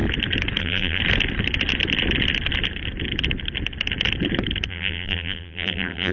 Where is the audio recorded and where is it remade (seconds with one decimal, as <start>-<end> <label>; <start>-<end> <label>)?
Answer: 0.0-0.6 recorded; 0.6-1.0 remade; 1.0-4.7 recorded; 4.7-6.1 remade